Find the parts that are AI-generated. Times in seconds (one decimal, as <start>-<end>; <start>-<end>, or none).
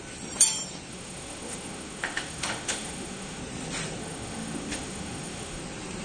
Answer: 0.9-3.4; 4.0-5.6